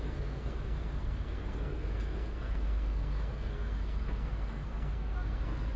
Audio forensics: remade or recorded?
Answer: remade